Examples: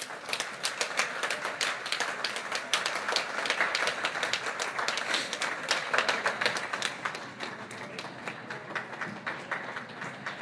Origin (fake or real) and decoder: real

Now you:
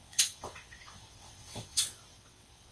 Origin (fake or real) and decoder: fake, vocoder, WaveNeXt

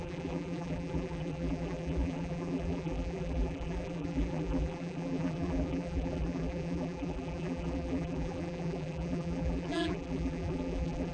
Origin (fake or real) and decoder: fake, vocoder, BigVGAN v2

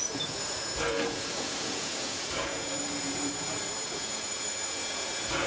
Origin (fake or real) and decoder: fake, vocoder, Vocos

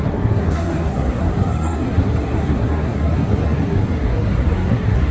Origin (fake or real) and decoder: fake, codec, SNAC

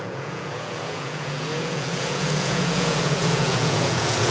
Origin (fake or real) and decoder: fake, vocoder, Vocos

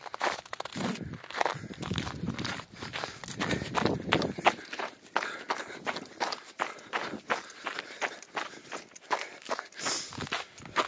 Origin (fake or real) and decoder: real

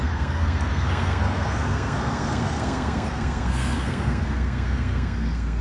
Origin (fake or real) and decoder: fake, codec, SNAC